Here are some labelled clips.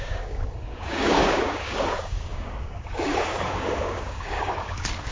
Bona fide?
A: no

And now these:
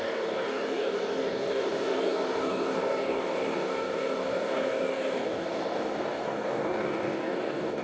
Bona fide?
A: no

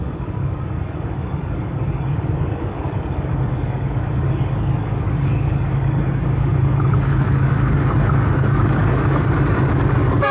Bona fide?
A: no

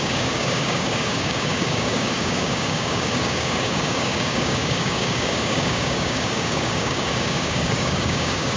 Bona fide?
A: no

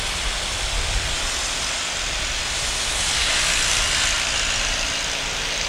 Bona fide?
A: yes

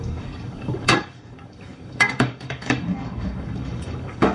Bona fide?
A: no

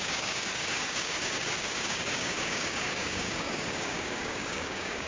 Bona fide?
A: no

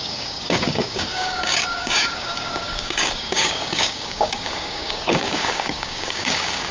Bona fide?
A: no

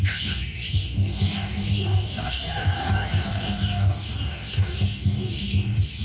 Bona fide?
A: no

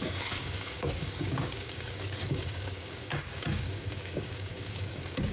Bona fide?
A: no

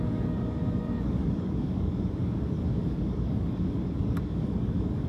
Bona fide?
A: no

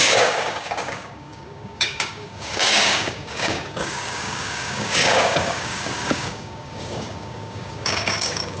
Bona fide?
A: no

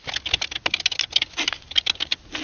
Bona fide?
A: yes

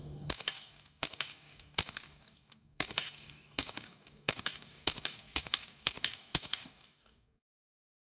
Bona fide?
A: no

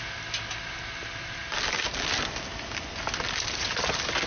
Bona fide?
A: yes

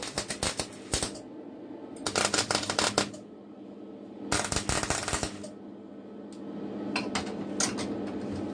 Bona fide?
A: yes